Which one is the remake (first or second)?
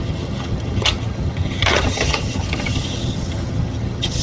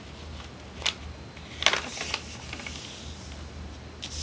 first